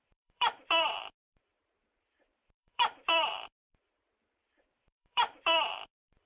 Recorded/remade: remade